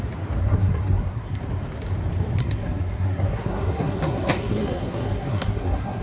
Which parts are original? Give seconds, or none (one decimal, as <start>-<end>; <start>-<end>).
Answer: 0.0-0.4; 1.4-2.4